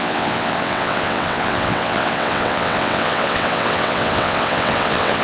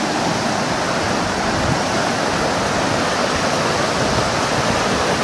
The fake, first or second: first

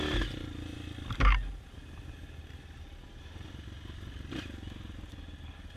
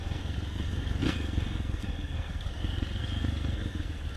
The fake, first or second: second